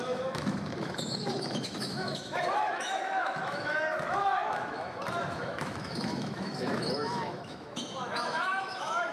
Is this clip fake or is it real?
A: fake